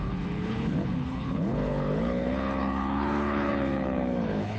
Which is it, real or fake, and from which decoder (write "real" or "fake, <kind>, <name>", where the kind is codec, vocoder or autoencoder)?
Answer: fake, codec, HILCodec